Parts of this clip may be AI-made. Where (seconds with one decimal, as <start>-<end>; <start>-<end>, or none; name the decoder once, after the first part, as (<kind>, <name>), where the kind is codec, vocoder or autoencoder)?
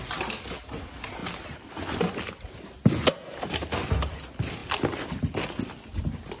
none